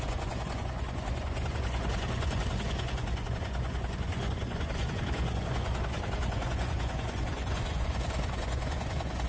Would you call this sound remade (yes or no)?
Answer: yes